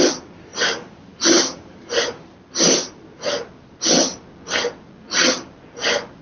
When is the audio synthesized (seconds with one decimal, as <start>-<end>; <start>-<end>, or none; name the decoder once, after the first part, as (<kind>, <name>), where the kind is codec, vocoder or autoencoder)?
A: 0.5-3.8 (vocoder, BigVGAN v2)